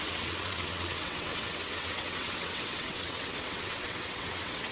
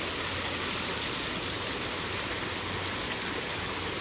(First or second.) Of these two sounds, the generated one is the first